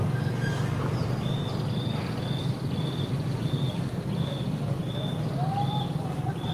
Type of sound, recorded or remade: recorded